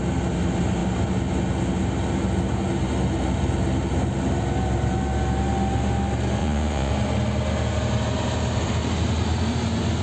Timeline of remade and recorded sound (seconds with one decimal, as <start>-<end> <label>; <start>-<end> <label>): 0.0-6.4 recorded; 6.4-6.9 remade; 6.9-10.0 recorded